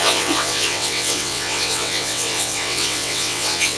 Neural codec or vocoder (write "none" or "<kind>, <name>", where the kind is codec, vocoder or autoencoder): vocoder, WaveNeXt